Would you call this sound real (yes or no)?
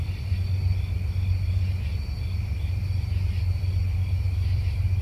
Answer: yes